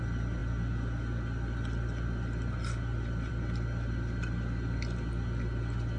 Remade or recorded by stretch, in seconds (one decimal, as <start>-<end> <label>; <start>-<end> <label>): 0.0-6.0 recorded